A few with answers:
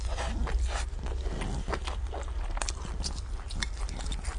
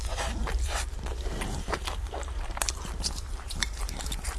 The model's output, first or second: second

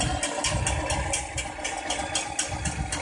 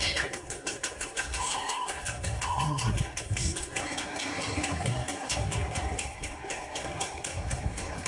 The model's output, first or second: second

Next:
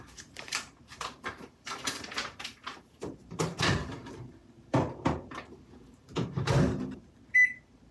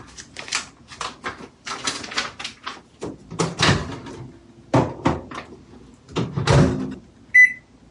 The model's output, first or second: first